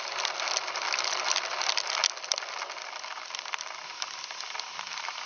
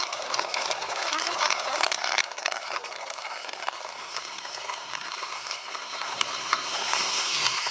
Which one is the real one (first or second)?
first